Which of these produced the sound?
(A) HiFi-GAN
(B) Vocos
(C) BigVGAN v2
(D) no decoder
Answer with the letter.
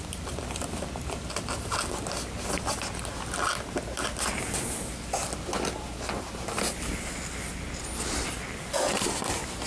D